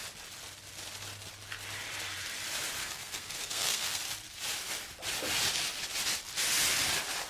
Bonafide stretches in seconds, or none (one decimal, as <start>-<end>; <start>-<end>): 0.0-2.8; 4.0-7.3